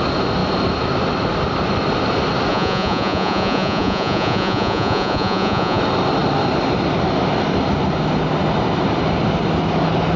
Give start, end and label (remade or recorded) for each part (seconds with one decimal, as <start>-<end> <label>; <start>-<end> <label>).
0.0-2.5 recorded; 2.5-5.8 remade; 5.8-10.2 recorded